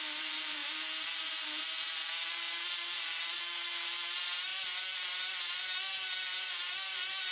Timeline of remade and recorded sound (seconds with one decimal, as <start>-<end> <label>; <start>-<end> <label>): 0.0-7.3 remade